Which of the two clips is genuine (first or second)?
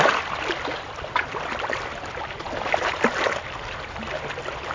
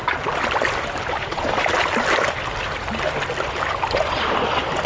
second